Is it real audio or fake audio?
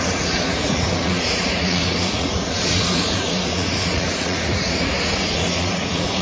fake